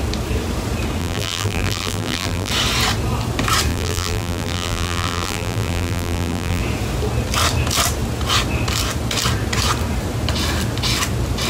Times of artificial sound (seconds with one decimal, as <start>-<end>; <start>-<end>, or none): 1.0-2.5; 3.7-6.6